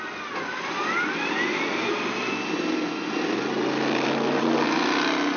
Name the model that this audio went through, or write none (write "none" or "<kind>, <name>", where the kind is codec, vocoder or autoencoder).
none